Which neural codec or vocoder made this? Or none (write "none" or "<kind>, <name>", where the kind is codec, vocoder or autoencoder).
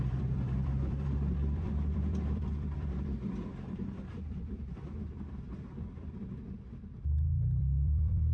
vocoder, BigVGAN v2